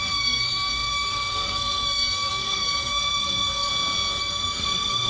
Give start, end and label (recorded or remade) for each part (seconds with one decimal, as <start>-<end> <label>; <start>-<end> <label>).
0.0-3.7 remade; 3.7-4.2 recorded; 4.2-5.1 remade